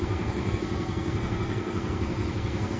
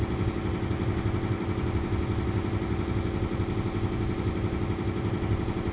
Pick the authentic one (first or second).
second